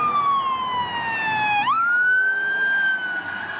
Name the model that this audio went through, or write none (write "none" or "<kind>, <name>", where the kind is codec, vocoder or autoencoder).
none